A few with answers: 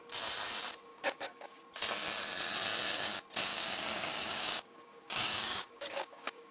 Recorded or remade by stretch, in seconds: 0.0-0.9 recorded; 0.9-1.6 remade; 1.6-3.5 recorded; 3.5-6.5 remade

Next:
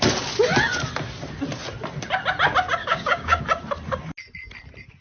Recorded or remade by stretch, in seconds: 0.0-2.8 recorded; 2.8-3.4 remade; 3.4-5.0 recorded

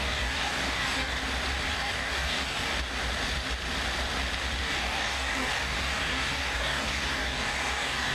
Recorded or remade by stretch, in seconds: 0.0-1.2 remade; 1.2-1.7 recorded; 1.7-2.7 remade; 2.7-4.6 recorded; 4.6-8.1 remade